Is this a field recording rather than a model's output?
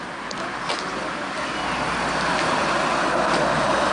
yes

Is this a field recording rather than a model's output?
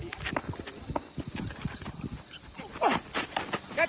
yes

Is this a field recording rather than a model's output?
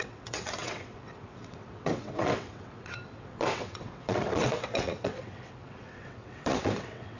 no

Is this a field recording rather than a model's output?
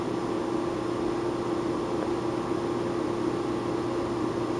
yes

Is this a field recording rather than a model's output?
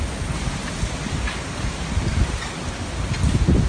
yes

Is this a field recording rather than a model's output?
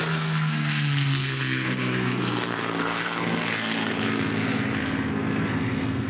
no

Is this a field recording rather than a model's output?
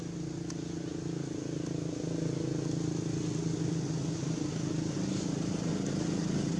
yes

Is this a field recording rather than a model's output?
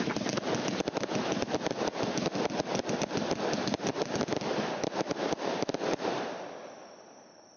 yes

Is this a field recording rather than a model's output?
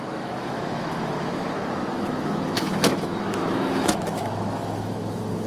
no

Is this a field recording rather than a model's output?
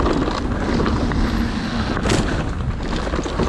yes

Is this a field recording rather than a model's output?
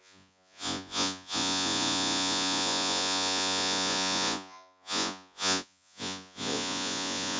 no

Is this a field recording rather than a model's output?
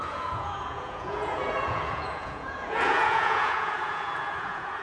no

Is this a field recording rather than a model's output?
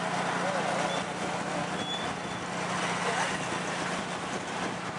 yes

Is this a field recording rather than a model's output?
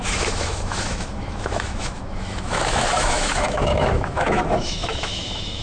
no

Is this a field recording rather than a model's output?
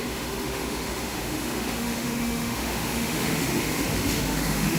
no